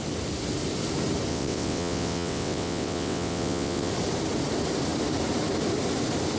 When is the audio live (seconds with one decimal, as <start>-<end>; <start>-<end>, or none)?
0.0-1.3; 3.9-6.4